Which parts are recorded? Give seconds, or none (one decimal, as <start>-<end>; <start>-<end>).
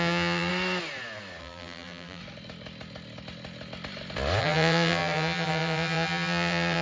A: 0.5-1.4; 2.2-4.4